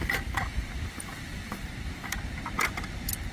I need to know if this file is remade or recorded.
remade